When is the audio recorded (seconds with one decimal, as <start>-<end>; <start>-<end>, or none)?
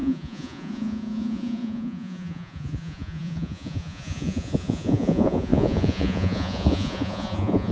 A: none